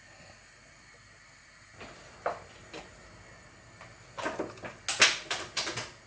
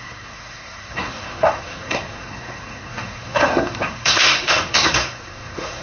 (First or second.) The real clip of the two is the first